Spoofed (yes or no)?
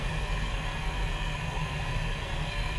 yes